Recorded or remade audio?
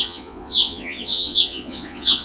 remade